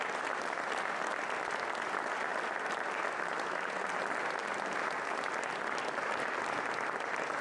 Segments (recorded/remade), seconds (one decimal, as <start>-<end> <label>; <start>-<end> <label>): 0.0-7.4 recorded